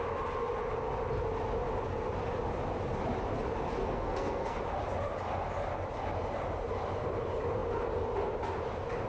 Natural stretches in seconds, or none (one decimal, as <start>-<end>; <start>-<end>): 0.0-3.8; 4.6-9.1